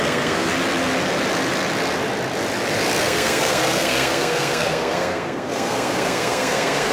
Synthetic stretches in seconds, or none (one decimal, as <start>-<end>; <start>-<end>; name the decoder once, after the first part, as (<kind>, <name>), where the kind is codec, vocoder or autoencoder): 0.0-0.5 (codec, SNAC); 3.0-6.9